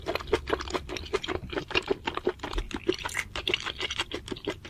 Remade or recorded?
recorded